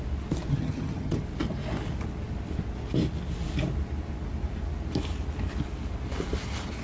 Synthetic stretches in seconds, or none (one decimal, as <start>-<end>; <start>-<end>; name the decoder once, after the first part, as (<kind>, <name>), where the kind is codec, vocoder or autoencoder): 0.5-1.2 (vocoder, HiFi-GAN)